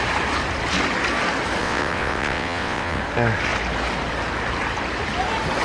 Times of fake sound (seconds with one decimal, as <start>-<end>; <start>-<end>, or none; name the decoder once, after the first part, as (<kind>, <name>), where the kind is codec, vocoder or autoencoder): 1.6-3.0 (vocoder, WaveNeXt)